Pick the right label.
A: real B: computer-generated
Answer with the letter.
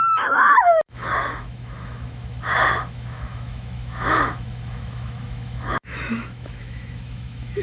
B